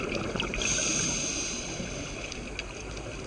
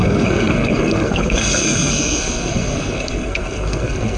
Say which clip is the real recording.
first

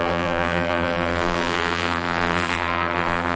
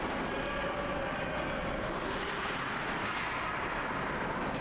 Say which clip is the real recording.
second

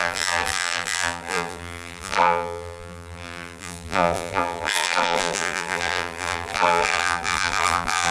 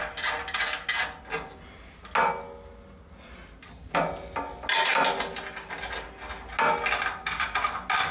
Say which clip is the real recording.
second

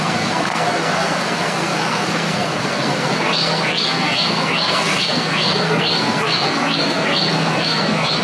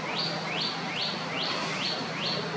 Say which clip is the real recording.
second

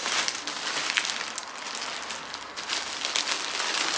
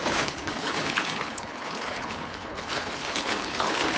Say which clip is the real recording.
first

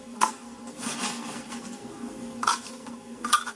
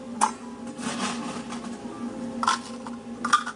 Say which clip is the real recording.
second